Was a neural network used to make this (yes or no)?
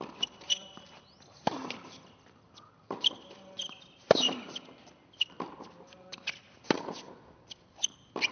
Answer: yes